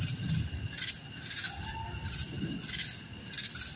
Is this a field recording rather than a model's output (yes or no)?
yes